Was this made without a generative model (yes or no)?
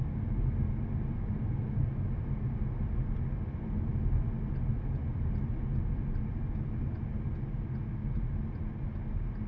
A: yes